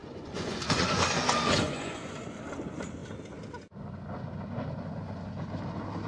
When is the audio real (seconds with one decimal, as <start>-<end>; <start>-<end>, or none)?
2.4-6.1